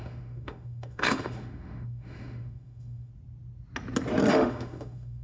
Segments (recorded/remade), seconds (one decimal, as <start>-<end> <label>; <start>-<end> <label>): 0.0-3.1 remade; 3.1-4.3 recorded; 4.3-5.2 remade

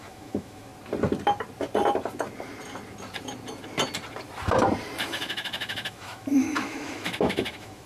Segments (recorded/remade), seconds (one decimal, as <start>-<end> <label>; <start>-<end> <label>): 0.0-0.7 remade; 0.7-5.1 recorded; 5.1-7.9 remade

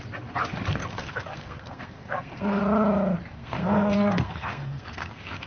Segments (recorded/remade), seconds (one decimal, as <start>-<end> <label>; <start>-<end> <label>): 0.0-0.8 recorded; 0.8-2.6 remade; 2.6-3.3 recorded; 3.3-5.5 remade